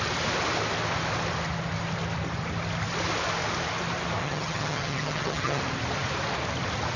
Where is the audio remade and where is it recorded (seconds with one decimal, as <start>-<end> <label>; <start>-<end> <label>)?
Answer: 0.0-4.2 recorded; 4.2-5.6 remade; 5.6-7.0 recorded